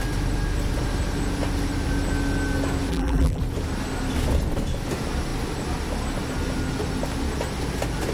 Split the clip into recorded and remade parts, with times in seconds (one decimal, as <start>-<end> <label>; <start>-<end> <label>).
0.0-2.9 recorded; 2.9-3.4 remade; 3.4-8.1 recorded

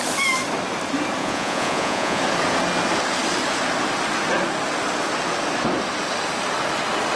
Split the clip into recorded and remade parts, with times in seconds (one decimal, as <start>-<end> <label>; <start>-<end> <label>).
0.0-1.2 recorded; 1.2-2.2 remade; 2.2-7.2 recorded

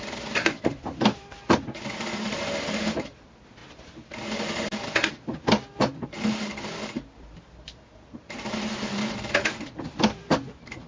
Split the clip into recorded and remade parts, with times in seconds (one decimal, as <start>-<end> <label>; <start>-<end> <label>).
0.0-3.6 remade; 3.6-8.9 recorded; 8.9-10.9 remade

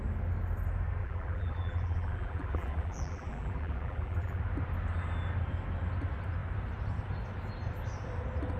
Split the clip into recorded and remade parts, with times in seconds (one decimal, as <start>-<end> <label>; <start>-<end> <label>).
0.0-1.0 recorded; 1.0-4.4 remade; 4.4-8.6 recorded

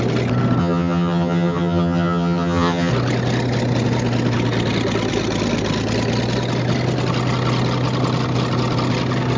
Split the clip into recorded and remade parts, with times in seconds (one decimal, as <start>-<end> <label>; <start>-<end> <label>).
0.0-0.6 recorded; 0.6-2.9 remade; 2.9-9.4 recorded

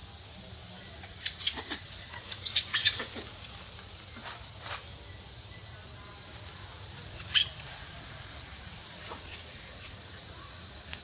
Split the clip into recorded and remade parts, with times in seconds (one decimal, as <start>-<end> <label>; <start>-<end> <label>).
0.0-0.9 recorded; 0.9-2.8 remade; 2.8-6.5 recorded; 6.5-11.0 remade